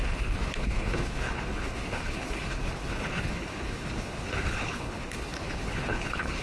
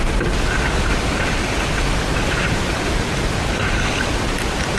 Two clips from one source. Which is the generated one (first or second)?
first